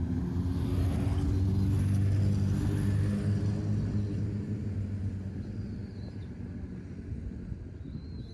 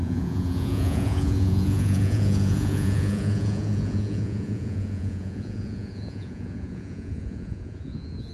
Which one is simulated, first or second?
second